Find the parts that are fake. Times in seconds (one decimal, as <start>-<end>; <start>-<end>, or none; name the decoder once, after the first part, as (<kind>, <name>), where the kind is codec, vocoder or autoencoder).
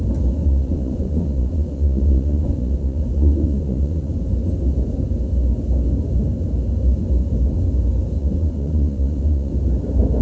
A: 0.4-4.1 (vocoder, Vocos); 8.2-9.5